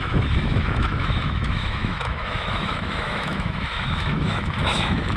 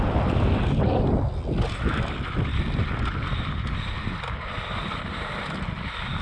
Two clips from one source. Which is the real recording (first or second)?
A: second